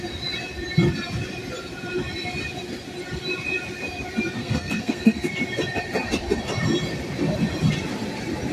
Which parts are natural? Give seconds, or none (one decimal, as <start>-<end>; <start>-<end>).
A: 0.0-4.4; 5.3-8.5